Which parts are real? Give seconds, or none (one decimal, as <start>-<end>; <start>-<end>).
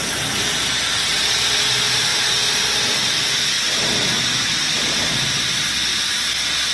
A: 0.0-6.7